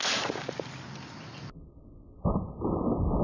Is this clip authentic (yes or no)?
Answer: yes